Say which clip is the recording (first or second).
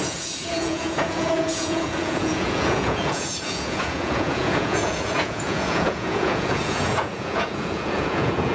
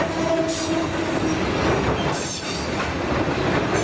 second